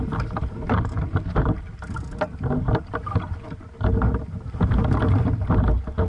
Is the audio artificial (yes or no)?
no